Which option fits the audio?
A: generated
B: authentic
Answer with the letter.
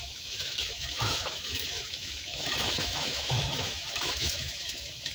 A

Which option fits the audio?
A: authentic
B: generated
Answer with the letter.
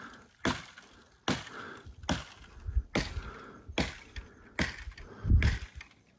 A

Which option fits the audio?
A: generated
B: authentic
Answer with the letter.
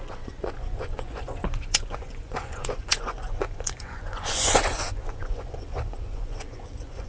A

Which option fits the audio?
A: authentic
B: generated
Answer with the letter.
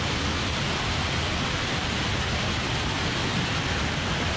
A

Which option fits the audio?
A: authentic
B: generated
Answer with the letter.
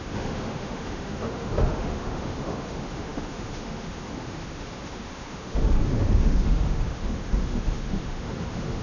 B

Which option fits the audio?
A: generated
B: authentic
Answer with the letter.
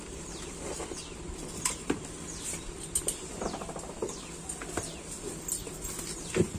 B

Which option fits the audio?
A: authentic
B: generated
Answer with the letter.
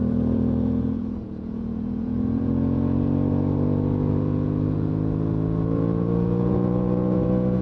B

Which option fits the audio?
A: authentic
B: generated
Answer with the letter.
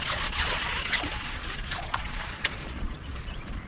B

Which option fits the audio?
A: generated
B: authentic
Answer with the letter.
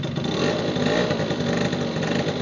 B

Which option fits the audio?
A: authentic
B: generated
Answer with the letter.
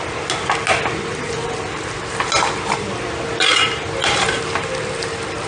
A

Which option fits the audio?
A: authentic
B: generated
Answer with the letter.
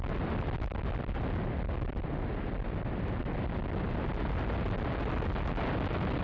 A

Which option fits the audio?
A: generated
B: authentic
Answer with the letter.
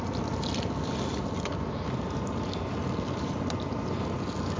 B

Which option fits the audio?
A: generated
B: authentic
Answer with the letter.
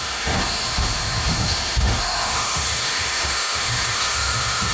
A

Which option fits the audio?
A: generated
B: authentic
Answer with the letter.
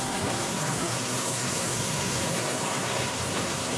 A